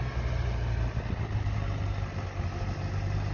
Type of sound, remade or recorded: recorded